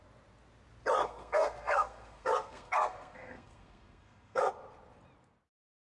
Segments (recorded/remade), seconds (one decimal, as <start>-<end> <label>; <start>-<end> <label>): 0.0-1.0 recorded; 1.0-4.5 remade; 4.5-5.9 recorded